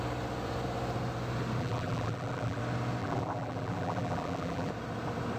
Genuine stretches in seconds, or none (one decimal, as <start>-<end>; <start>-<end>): 0.0-1.6; 2.6-3.0; 4.7-5.4